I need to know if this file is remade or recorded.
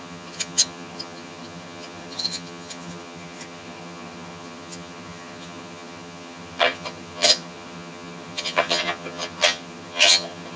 remade